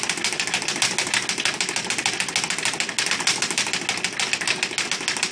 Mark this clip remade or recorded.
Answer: recorded